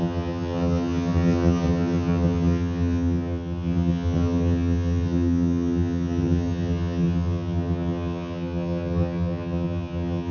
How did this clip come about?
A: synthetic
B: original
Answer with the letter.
A